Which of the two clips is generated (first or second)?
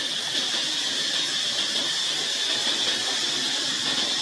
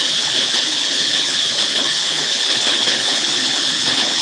second